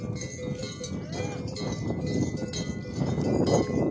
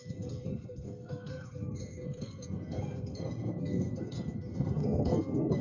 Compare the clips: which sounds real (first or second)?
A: first